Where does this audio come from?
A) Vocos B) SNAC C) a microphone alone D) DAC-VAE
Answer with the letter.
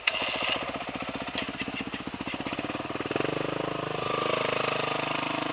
C